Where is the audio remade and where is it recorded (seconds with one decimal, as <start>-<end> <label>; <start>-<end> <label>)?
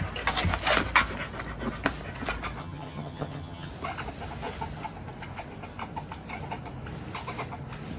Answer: 0.0-2.6 recorded; 2.6-3.7 remade; 3.7-8.0 recorded